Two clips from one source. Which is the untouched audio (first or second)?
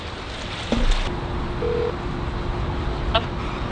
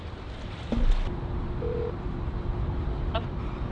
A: first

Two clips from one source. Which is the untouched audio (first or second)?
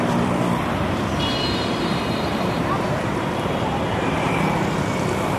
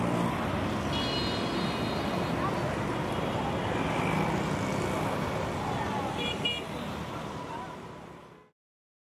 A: second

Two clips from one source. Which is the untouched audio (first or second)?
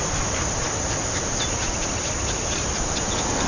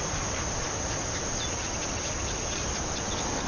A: second